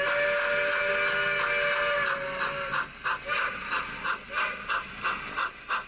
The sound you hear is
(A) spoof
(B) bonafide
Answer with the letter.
B